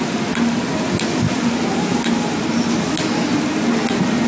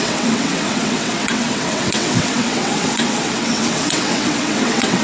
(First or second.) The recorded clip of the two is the first